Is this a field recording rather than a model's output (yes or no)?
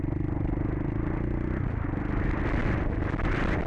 yes